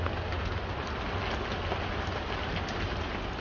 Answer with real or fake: real